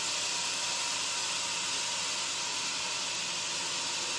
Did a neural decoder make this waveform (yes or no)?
no